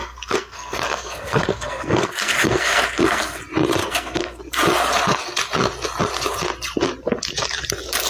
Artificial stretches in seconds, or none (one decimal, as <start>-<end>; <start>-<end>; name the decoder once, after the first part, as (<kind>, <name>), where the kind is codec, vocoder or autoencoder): 0.0-3.4 (codec, SNAC); 3.8-4.4